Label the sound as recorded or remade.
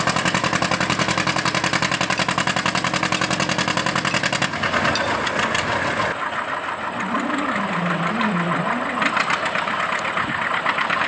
recorded